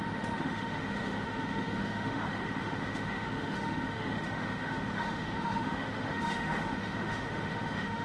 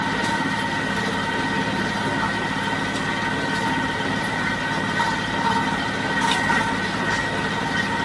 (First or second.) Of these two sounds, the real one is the second